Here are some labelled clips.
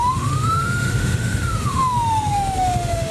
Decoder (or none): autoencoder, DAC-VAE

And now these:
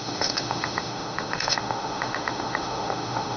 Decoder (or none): autoencoder, DAC-VAE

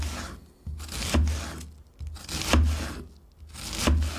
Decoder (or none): none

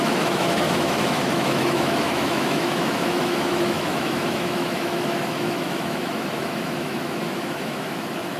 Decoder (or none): autoencoder, DAC-VAE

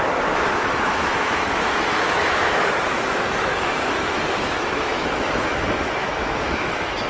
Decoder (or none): autoencoder, DAC-VAE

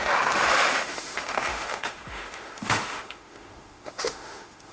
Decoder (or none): autoencoder, DAC-VAE